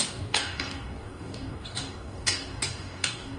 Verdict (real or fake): fake